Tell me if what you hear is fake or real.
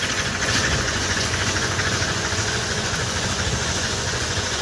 fake